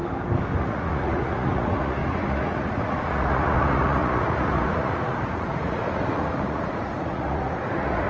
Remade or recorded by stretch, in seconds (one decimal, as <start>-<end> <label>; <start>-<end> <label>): 0.0-0.6 recorded; 0.6-8.1 remade

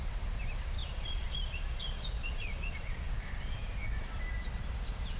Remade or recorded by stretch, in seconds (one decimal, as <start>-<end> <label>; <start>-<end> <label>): 0.0-0.8 recorded; 0.8-3.1 remade; 3.1-5.2 recorded

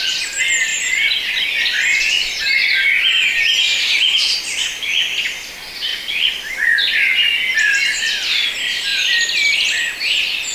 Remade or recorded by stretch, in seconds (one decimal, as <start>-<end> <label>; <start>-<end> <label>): 0.0-10.5 recorded

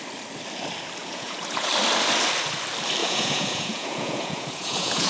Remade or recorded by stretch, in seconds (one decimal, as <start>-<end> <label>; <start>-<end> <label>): 0.0-1.0 recorded; 1.0-1.7 remade; 1.7-3.0 recorded; 3.0-5.1 remade

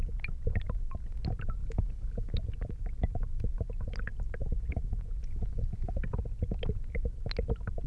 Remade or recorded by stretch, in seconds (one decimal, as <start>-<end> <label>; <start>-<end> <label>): 0.0-1.6 recorded; 1.6-2.3 remade; 2.3-5.2 recorded; 5.2-6.0 remade; 6.0-7.9 recorded

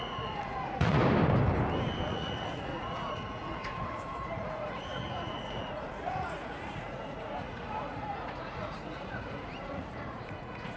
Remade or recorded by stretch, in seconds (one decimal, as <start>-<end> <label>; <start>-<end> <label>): 0.0-1.0 remade; 1.0-2.1 recorded; 2.1-10.8 remade